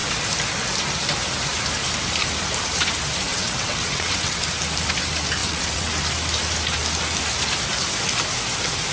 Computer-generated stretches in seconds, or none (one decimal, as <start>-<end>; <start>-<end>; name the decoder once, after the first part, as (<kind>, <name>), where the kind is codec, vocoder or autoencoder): 3.3-4.4 (vocoder, WaveNeXt); 5.4-5.9